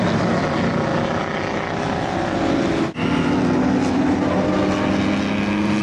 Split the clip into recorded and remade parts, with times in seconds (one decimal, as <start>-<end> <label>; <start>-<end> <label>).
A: 0.0-5.8 recorded